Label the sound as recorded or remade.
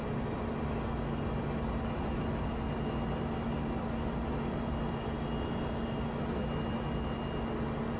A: recorded